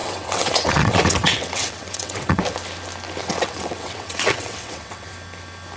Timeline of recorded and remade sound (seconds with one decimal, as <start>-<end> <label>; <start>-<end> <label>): 0.0-2.4 remade; 2.4-3.2 recorded; 3.2-5.1 remade; 5.1-5.8 recorded